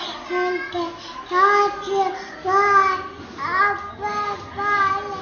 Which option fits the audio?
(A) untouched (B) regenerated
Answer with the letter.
A